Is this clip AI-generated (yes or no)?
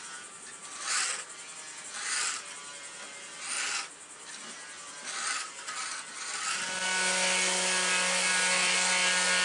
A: no